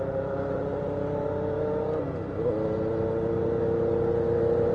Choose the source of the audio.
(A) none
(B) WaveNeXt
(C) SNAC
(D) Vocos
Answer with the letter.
A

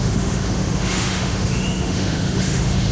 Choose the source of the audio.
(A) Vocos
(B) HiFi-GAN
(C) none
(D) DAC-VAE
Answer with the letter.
D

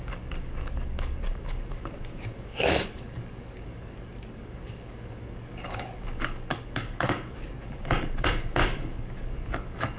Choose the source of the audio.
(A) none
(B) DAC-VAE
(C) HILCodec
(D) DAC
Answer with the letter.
D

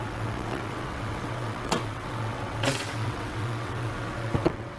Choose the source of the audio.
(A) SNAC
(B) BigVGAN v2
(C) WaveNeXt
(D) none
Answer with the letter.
C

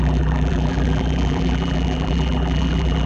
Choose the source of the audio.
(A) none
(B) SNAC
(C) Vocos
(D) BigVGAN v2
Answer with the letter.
D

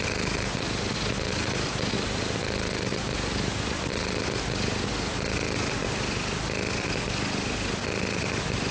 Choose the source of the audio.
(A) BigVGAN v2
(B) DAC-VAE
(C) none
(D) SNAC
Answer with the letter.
C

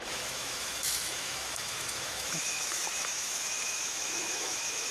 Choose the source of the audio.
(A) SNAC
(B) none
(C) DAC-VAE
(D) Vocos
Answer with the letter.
C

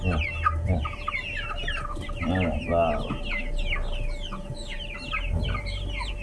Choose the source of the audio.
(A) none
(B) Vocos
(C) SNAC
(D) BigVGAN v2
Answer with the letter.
A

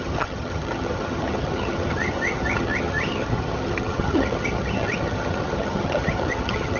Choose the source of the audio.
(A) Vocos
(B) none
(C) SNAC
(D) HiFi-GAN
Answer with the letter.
D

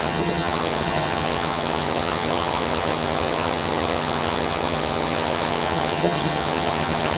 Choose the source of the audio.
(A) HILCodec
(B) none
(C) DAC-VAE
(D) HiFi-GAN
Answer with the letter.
D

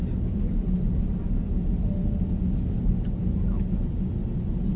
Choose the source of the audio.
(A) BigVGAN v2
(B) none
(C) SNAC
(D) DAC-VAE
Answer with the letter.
B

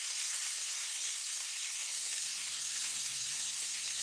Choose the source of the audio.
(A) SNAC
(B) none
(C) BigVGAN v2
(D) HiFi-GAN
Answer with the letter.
A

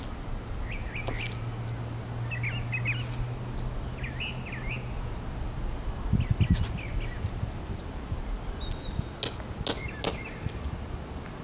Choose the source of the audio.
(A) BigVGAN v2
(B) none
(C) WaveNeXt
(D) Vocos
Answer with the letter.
B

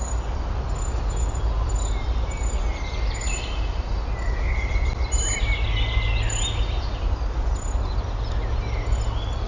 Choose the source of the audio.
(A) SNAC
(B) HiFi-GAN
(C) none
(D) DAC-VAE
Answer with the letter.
C